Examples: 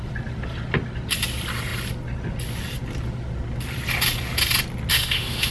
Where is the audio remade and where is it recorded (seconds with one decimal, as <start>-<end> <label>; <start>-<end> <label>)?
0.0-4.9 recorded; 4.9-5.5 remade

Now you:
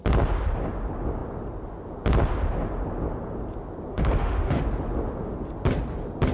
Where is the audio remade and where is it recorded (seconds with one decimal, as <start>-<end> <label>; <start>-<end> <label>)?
0.0-3.9 recorded; 3.9-4.6 remade; 4.6-6.3 recorded

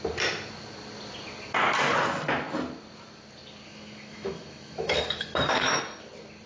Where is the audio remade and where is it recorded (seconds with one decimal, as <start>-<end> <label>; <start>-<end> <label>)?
0.0-3.7 recorded; 3.7-5.8 remade; 5.8-6.5 recorded

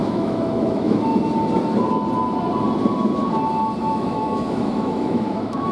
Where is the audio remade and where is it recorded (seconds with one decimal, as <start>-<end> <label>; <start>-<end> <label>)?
0.0-1.1 remade; 1.1-3.9 recorded; 3.9-5.7 remade

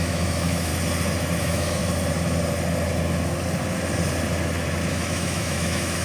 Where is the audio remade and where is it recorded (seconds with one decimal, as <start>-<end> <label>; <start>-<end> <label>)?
0.0-0.7 remade; 0.7-1.4 recorded; 1.4-1.8 remade; 1.8-4.9 recorded; 4.9-6.0 remade